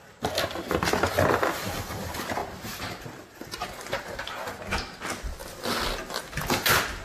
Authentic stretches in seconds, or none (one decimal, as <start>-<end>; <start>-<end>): 0.0-2.4; 4.6-7.0